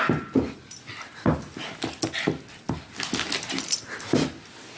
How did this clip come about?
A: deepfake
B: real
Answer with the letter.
B